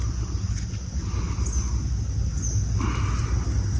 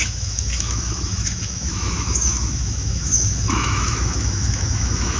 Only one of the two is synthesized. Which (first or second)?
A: second